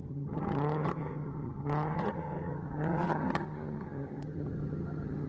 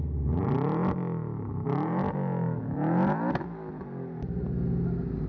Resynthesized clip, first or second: first